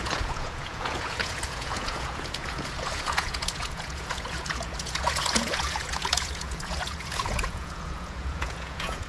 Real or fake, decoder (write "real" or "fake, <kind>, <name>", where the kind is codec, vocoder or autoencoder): fake, vocoder, Vocos